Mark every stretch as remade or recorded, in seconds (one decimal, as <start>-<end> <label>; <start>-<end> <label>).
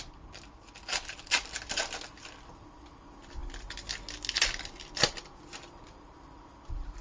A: 0.0-7.0 recorded